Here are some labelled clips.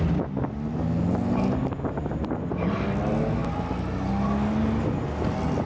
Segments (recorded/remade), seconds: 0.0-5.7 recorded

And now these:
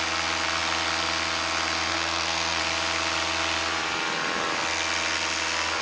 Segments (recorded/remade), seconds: 0.0-1.9 recorded; 1.9-2.6 remade; 2.6-5.8 recorded

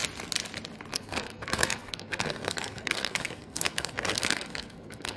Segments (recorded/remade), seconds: 0.0-0.9 recorded; 0.9-5.2 remade

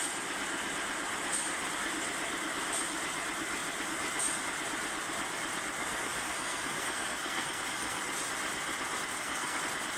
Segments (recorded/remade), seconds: 0.0-5.8 recorded; 5.8-8.0 remade; 8.0-9.1 recorded; 9.1-9.6 remade; 9.6-10.0 recorded

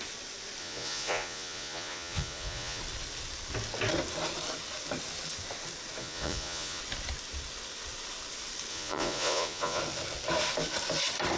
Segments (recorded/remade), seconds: 0.0-0.6 recorded; 0.6-2.8 remade; 2.8-6.0 recorded; 6.0-6.8 remade; 6.8-8.7 recorded; 8.7-9.8 remade; 9.8-11.4 recorded

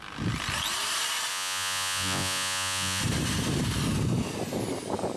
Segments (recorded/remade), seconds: 0.0-1.3 recorded; 1.3-3.0 remade; 3.0-5.2 recorded

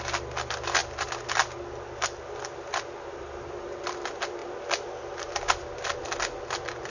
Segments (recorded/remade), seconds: 0.0-6.9 recorded

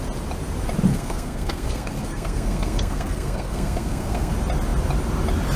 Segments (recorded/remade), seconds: 0.0-0.9 recorded; 0.9-4.3 remade; 4.3-5.6 recorded